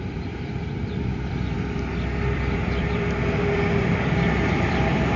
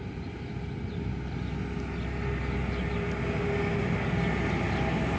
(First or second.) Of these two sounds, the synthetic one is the first